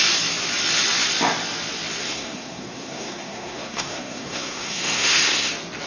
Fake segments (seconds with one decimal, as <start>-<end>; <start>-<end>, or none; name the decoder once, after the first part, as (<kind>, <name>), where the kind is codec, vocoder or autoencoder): 2.0-5.5 (codec, SNAC)